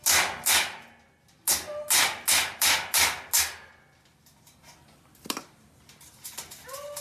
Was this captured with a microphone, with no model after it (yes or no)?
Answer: yes